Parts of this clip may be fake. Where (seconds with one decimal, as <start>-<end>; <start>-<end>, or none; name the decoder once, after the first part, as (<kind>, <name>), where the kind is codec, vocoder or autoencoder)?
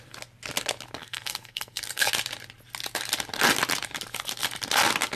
1.0-2.1 (codec, SNAC)